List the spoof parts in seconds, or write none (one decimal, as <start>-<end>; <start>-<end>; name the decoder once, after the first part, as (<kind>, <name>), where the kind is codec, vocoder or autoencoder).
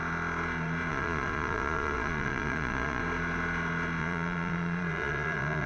0.9-3.0 (vocoder, Vocos); 4.0-5.7